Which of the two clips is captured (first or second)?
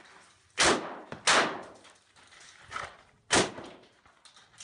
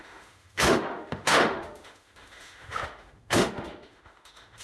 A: first